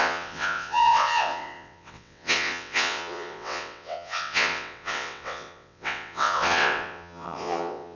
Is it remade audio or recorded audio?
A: remade